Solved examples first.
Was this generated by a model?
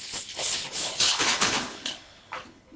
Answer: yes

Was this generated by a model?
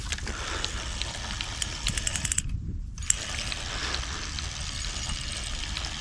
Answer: no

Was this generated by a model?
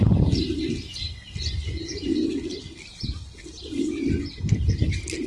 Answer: no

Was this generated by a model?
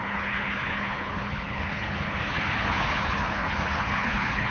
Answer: yes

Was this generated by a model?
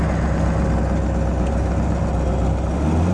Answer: no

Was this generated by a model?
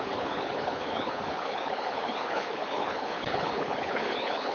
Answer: yes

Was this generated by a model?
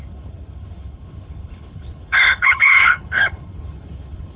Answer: yes